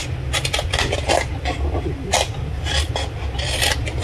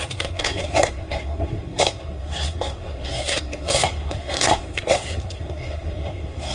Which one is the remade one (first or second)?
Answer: second